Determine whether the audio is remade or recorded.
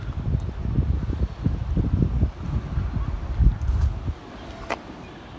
recorded